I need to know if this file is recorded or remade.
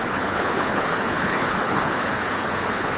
remade